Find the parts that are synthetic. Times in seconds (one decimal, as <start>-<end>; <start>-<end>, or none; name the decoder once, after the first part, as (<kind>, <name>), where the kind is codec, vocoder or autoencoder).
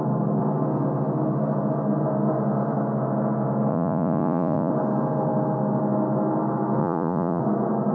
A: 3.7-4.7 (vocoder, Vocos); 6.8-7.4